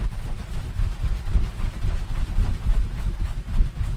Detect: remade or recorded remade